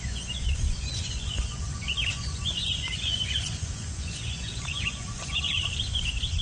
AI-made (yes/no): yes